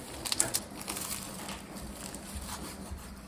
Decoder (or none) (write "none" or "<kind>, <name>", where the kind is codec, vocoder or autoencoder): vocoder, BigVGAN v2